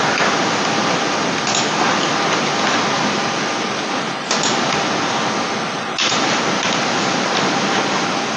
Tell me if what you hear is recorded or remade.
recorded